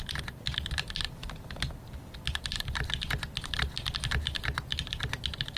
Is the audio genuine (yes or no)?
yes